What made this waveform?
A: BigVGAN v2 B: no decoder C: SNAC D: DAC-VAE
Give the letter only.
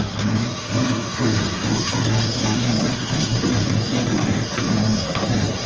C